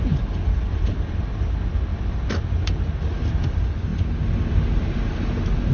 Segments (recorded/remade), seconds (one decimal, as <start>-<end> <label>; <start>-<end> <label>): 0.0-5.7 recorded